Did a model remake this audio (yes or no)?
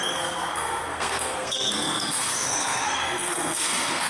yes